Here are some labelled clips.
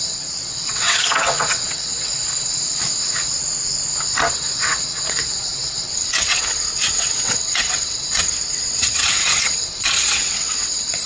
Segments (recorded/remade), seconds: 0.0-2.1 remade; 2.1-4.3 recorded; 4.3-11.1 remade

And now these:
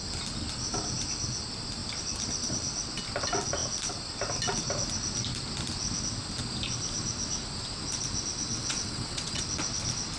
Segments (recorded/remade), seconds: 0.0-8.5 recorded; 8.5-9.4 remade; 9.4-10.2 recorded

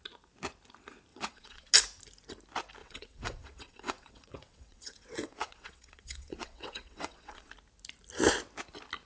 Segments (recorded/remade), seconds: 0.0-1.1 recorded; 1.1-1.7 remade; 1.7-2.8 recorded; 2.8-7.5 remade; 7.5-9.1 recorded

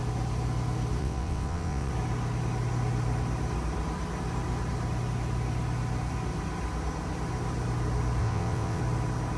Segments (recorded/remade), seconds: 0.0-1.0 recorded; 1.0-1.9 remade; 1.9-8.2 recorded; 8.2-8.8 remade; 8.8-9.4 recorded